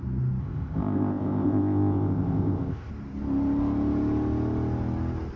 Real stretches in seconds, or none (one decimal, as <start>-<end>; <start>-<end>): 0.0-0.4; 2.9-5.4